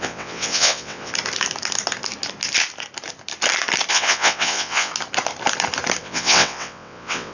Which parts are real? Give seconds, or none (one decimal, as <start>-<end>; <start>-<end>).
1.1-3.9; 4.9-6.0